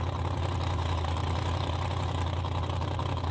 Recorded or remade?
recorded